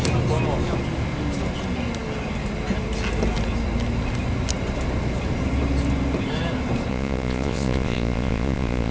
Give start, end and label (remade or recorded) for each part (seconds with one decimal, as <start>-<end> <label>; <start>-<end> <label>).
0.0-6.9 recorded; 6.9-8.9 remade